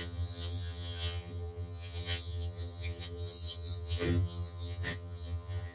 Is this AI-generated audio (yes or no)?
yes